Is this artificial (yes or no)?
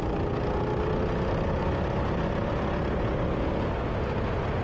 no